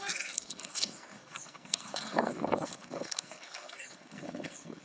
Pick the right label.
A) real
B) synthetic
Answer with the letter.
B